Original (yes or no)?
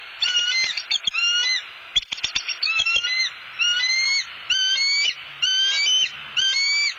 yes